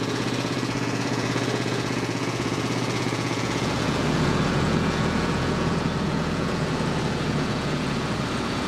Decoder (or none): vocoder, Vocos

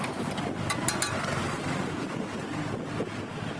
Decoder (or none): none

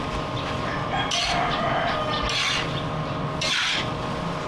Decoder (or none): none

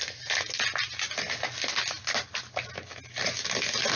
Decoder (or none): none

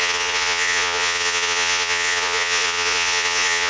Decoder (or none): vocoder, Vocos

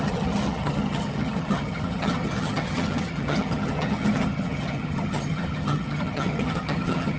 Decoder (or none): vocoder, HiFi-GAN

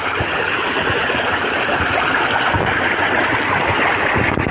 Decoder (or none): none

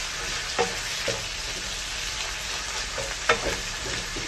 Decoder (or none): none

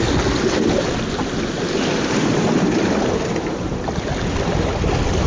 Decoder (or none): none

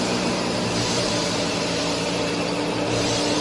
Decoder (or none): vocoder, BigVGAN v2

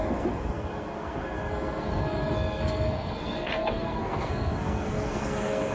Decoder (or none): codec, SNAC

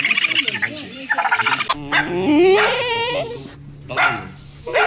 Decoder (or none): none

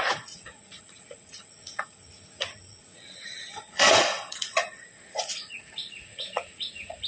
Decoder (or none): vocoder, Vocos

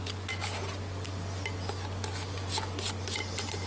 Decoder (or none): none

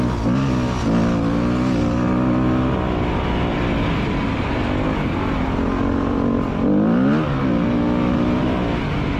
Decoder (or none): none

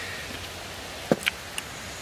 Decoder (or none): none